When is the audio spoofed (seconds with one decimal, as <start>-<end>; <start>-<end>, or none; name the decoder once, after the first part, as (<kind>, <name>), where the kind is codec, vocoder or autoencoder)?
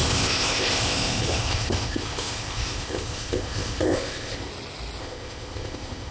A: 0.0-4.5 (codec, ZipCodec); 5.0-6.1